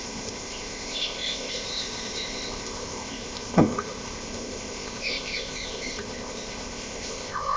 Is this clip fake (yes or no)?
yes